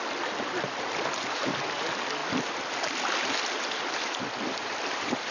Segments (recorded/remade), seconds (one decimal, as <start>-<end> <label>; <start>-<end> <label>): 0.0-5.3 recorded